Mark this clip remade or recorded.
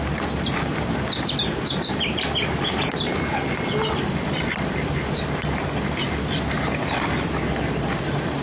remade